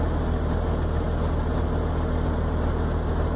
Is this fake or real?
real